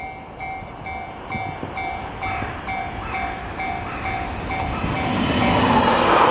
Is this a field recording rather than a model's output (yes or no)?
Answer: yes